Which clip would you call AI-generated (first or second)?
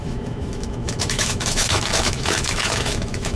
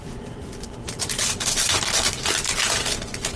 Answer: first